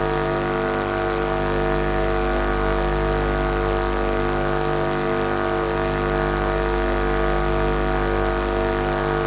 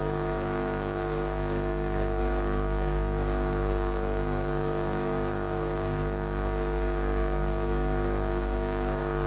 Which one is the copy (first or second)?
second